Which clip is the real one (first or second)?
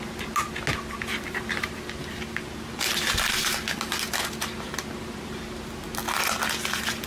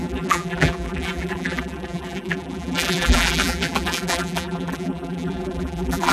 first